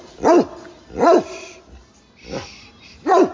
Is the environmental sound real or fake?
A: real